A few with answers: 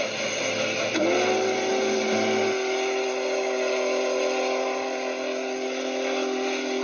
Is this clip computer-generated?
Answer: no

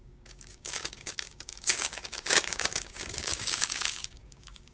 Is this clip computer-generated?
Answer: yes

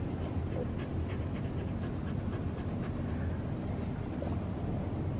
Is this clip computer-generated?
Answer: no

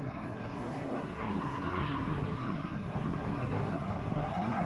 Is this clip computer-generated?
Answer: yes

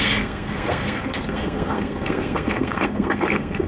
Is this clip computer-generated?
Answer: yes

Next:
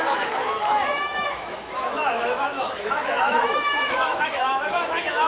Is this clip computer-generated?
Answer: yes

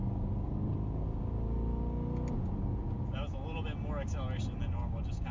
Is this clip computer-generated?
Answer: no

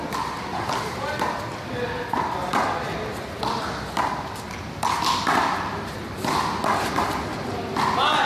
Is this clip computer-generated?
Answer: no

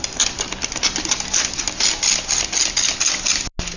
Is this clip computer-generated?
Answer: no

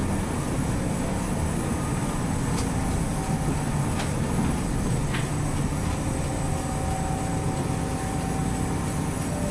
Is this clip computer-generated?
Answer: no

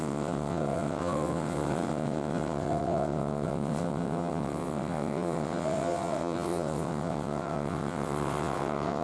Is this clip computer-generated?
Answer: yes